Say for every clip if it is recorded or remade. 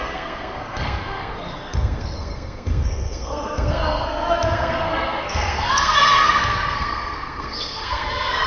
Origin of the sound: remade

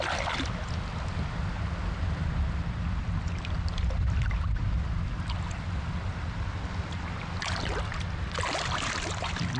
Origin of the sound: recorded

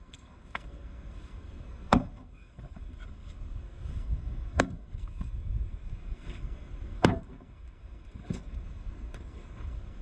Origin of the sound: remade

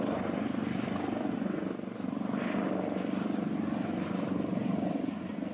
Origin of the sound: recorded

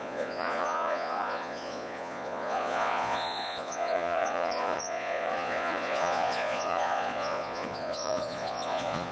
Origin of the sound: remade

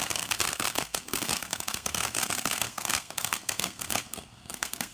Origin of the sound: remade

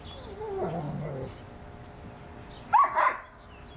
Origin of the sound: recorded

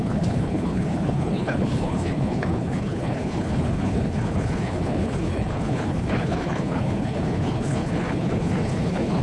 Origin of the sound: remade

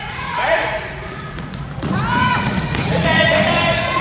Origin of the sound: remade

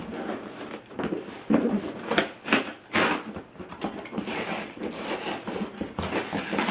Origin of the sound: recorded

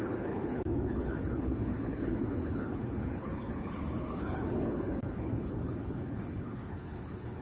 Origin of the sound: remade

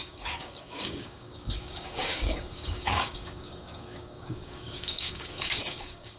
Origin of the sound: remade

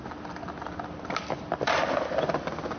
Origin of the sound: recorded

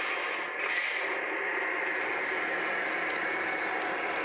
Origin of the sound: recorded